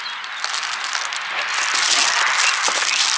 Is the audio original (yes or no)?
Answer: yes